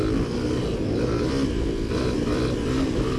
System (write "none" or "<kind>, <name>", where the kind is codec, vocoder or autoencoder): none